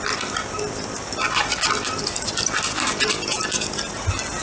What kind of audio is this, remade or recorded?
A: recorded